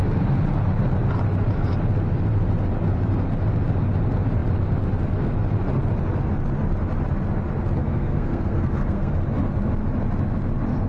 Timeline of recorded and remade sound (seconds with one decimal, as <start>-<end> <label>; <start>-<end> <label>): 0.0-7.8 recorded; 7.8-9.1 remade; 9.1-10.9 recorded